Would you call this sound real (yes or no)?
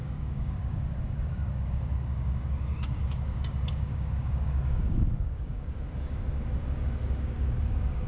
no